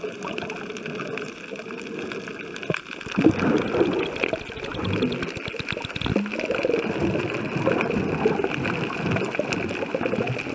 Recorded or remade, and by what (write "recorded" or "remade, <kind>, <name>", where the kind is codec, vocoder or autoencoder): recorded